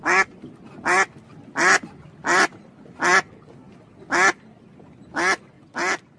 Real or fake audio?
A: real